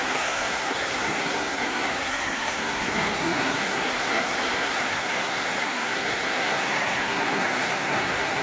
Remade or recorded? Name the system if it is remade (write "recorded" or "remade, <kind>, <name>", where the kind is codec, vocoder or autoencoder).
remade, codec, SNAC